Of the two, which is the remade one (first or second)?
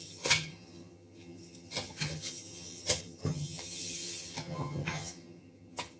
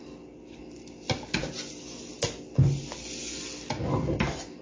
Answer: first